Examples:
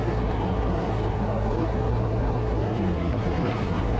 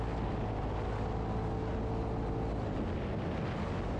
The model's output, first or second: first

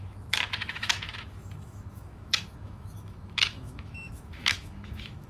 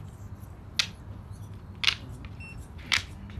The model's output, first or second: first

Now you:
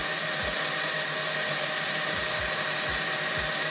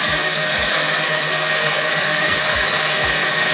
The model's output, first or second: second